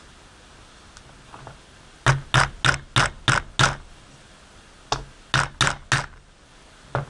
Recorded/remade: recorded